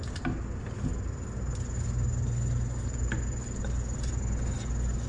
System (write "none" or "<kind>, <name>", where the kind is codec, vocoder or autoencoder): none